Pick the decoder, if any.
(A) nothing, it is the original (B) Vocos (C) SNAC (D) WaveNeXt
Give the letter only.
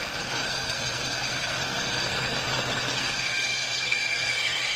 C